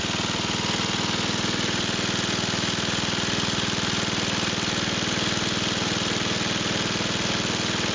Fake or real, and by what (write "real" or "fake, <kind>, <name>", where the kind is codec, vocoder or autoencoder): real